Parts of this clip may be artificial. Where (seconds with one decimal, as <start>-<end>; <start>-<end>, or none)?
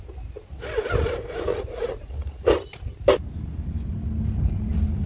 1.5-2.4